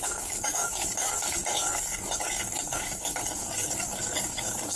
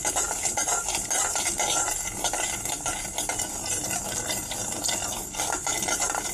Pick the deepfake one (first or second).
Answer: first